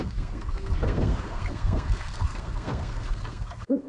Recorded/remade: remade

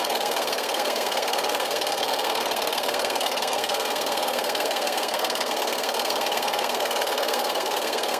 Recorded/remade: remade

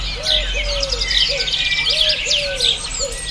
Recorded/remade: recorded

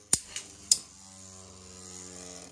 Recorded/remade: recorded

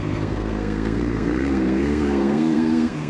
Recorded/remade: remade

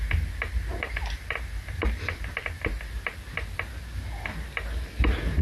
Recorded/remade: recorded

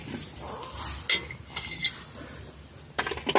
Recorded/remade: recorded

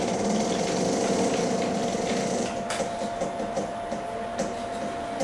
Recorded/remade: recorded